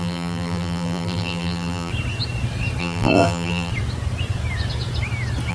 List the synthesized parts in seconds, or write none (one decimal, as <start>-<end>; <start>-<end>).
0.0-1.9; 2.8-3.7